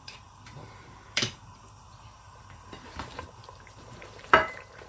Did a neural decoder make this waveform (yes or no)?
yes